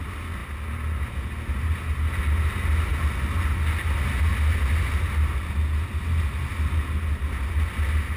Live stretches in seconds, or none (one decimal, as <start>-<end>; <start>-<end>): 0.0-8.2